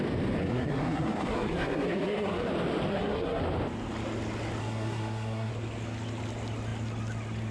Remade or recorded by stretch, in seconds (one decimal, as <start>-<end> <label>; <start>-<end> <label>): 0.0-0.4 recorded; 0.4-2.5 remade; 2.5-2.9 recorded; 2.9-3.4 remade; 3.4-4.6 recorded; 4.6-5.5 remade; 5.5-7.5 recorded